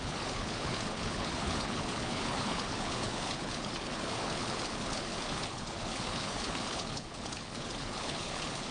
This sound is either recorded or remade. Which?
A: remade